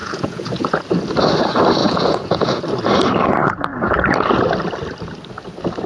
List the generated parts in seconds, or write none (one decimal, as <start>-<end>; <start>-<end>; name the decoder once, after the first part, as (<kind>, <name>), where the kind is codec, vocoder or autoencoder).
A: 0.0-0.8 (vocoder, Vocos); 1.8-2.6